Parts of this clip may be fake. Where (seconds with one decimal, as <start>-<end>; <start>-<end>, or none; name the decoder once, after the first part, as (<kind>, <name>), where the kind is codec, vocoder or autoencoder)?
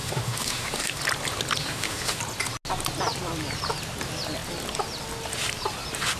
0.0-1.0 (autoencoder, DAC-VAE); 1.6-2.2